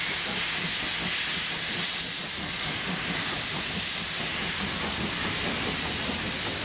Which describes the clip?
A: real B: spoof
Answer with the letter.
A